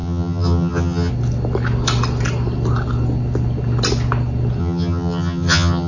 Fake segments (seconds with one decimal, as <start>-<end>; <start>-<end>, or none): 0.0-1.1; 4.6-5.9